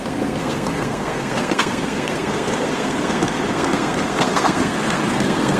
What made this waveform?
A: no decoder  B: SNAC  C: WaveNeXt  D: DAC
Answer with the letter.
B